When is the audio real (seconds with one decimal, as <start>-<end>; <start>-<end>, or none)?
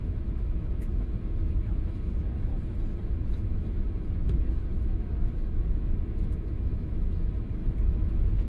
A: 2.5-3.0